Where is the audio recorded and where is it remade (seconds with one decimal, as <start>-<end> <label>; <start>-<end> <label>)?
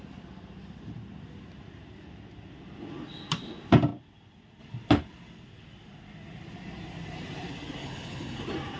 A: 0.0-7.8 recorded; 7.8-8.4 remade; 8.4-8.8 recorded